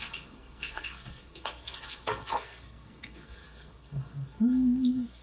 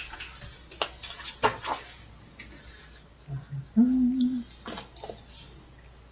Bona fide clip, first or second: second